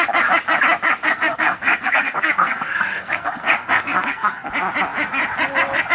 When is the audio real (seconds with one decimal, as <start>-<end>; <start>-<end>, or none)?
0.0-1.0; 4.5-5.9